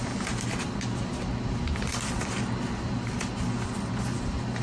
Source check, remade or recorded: recorded